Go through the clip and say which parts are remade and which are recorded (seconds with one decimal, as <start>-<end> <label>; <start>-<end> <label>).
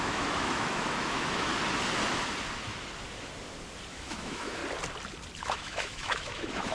0.0-1.5 remade; 1.5-3.9 recorded; 3.9-4.6 remade; 4.6-5.4 recorded; 5.4-6.7 remade